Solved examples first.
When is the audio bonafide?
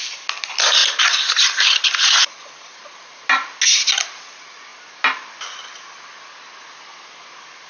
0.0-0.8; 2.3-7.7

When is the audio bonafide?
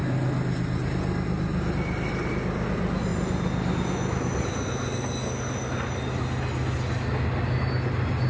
0.0-8.3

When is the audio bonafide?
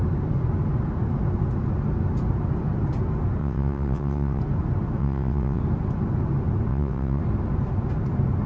0.0-3.4; 4.4-5.0; 5.6-6.7; 7.2-8.5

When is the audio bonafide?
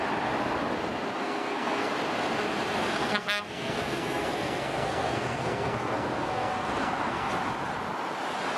0.0-1.2; 1.9-2.8; 7.3-8.6